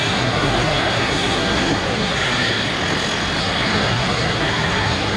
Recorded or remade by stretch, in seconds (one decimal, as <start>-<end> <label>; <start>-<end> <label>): 0.0-2.7 remade; 2.7-3.4 recorded; 3.4-5.2 remade